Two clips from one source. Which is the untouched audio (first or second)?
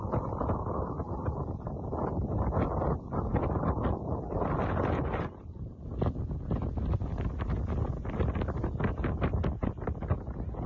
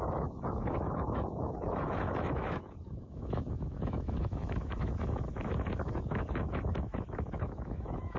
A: first